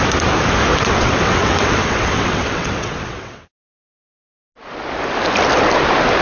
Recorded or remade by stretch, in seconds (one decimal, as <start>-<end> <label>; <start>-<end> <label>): 0.0-0.7 recorded; 0.7-3.5 remade; 3.5-6.2 recorded